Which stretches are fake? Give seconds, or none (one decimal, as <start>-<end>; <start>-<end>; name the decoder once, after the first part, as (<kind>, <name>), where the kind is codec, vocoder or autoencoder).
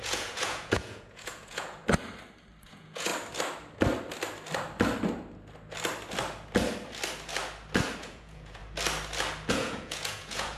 0.0-1.8 (vocoder, Vocos); 2.7-3.1; 8.0-8.6; 9.5-10.6